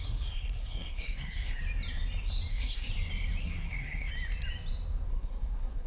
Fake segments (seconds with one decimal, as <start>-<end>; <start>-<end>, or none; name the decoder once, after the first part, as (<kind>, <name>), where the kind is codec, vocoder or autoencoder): 0.0-1.6 (codec, SNAC); 2.5-2.9; 3.4-4.1; 5.1-5.9